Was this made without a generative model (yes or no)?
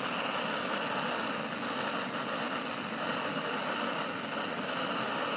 yes